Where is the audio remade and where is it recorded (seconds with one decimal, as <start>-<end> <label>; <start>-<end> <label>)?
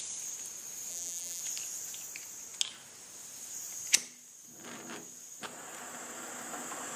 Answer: 0.0-0.9 recorded; 0.9-1.4 remade; 1.4-7.0 recorded